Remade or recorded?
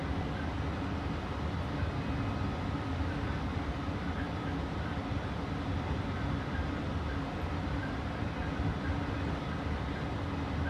recorded